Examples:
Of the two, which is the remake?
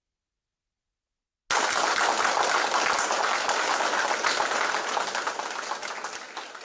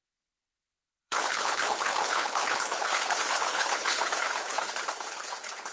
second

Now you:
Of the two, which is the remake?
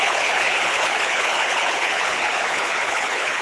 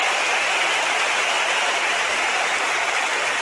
first